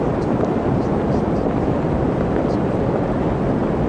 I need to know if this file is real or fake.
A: real